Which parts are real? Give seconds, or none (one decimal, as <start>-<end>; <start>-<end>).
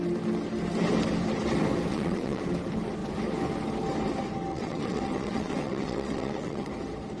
0.0-1.9; 2.4-4.5; 6.7-7.2